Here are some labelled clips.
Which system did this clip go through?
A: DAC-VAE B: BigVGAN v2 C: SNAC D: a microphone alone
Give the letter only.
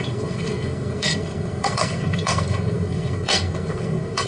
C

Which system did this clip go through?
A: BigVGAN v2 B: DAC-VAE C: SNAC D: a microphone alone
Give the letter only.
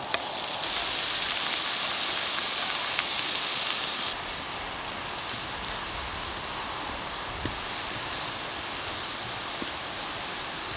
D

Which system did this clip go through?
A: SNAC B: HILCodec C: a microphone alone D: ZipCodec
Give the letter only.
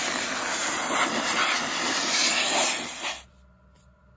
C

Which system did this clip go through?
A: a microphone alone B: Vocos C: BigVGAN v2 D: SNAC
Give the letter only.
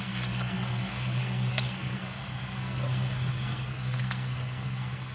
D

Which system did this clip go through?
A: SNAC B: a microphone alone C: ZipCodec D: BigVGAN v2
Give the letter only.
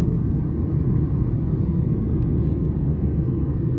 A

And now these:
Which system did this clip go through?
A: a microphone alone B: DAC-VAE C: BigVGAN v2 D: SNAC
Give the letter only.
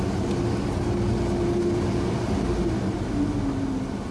A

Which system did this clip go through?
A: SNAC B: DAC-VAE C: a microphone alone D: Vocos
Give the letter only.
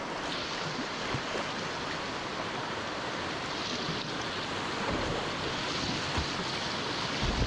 C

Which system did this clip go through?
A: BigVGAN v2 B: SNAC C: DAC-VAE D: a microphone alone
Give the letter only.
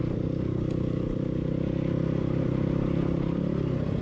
D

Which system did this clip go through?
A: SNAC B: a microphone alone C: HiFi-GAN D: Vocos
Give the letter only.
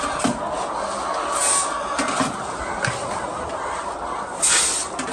B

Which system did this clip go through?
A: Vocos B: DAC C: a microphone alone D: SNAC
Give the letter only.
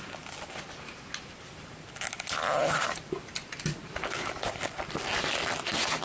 C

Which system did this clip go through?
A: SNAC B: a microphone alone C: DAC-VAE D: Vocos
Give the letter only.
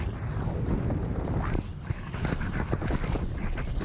B